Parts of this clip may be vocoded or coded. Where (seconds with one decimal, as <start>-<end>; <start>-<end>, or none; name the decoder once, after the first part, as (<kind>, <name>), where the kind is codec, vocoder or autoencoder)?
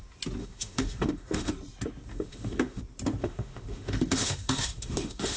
0.4-1.5 (autoencoder, DAC-VAE); 2.1-2.8; 3.2-5.4